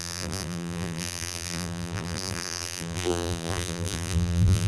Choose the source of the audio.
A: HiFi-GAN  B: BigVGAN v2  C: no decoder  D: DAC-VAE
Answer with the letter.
B